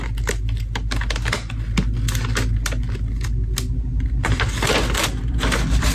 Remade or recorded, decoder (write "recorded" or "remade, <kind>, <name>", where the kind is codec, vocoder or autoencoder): recorded